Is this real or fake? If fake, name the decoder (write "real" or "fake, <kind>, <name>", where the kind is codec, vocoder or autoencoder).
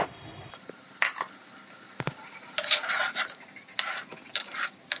real